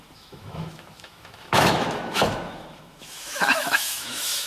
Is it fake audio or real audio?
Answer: fake